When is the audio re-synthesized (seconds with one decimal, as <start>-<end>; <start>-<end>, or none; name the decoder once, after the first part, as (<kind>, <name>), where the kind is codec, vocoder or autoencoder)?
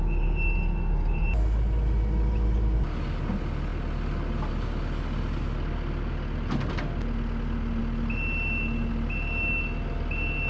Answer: none